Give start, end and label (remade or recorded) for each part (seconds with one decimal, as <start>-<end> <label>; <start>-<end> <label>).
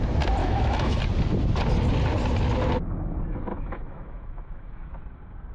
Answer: 0.0-0.4 recorded; 0.4-1.0 remade; 1.0-3.5 recorded; 3.5-5.0 remade; 5.0-5.5 recorded